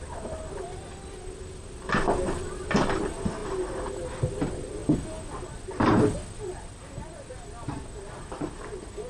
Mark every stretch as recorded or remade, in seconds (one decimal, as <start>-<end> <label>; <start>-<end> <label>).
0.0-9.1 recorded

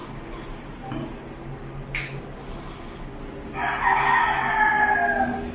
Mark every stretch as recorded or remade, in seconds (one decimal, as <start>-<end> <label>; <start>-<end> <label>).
0.0-5.5 recorded

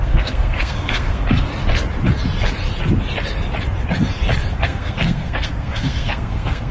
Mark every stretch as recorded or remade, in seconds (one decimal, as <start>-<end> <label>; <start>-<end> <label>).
0.0-1.5 remade; 1.5-4.5 recorded; 4.5-6.7 remade

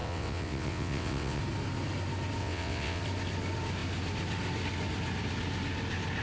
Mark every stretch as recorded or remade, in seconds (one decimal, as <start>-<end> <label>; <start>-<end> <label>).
0.0-1.4 remade; 1.4-2.4 recorded; 2.4-3.0 remade; 3.0-6.2 recorded